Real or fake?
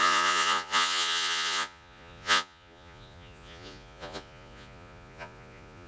fake